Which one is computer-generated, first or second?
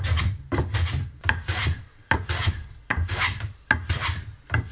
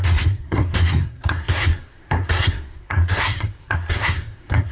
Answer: second